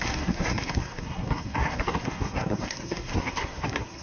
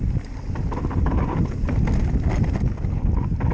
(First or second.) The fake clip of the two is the first